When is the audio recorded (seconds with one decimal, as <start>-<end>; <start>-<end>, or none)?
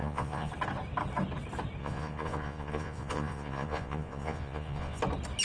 0.5-1.8; 5.0-5.4